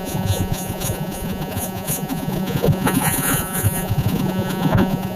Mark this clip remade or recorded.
remade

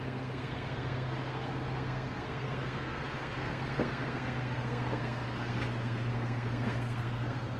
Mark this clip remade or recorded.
remade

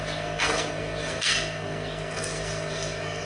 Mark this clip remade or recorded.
remade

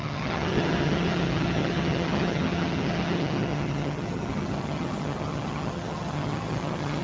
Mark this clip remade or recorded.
remade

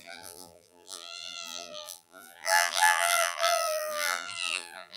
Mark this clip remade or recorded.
remade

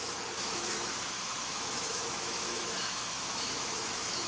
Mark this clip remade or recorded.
remade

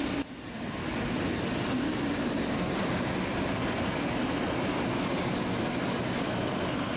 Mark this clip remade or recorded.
recorded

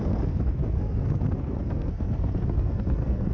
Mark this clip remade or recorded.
remade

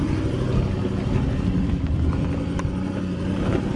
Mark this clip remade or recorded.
recorded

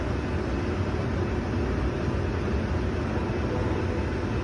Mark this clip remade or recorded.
recorded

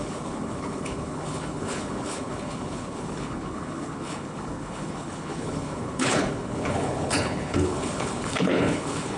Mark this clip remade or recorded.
remade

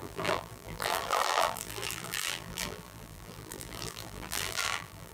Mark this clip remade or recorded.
remade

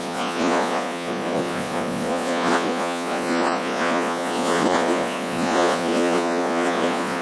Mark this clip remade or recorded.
remade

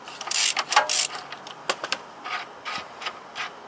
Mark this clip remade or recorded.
recorded